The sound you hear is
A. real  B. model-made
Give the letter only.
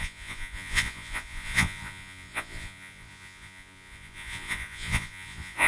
B